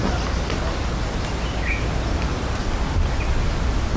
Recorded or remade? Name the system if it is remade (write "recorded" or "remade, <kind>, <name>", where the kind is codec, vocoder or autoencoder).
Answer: recorded